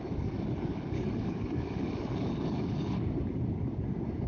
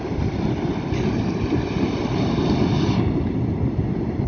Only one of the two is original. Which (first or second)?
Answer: second